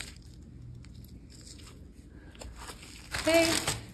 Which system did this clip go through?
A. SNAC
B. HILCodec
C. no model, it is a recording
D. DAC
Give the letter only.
C